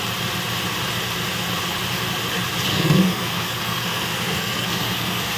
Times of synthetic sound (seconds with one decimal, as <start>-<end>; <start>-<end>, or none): 2.7-5.4